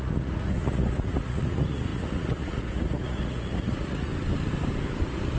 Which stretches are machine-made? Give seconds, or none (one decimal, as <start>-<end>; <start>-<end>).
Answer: 0.0-4.1